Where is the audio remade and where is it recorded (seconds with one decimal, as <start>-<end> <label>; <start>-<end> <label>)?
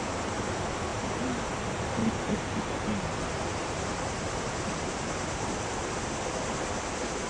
0.0-0.9 recorded; 0.9-1.5 remade; 1.5-2.0 recorded; 2.0-2.6 remade; 2.6-3.6 recorded; 3.6-5.6 remade; 5.6-7.3 recorded